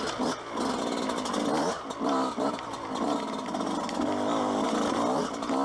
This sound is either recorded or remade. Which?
recorded